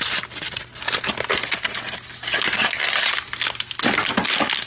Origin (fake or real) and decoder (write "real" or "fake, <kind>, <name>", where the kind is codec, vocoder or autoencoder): real